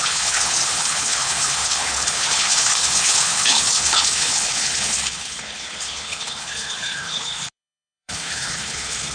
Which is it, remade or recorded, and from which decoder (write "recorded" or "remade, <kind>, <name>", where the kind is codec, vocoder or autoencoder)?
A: remade, codec, HILCodec